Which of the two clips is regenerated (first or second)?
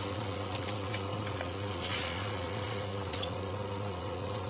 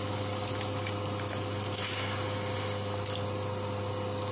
first